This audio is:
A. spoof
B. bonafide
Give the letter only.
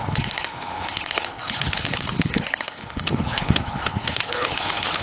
A